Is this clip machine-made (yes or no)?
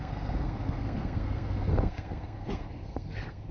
yes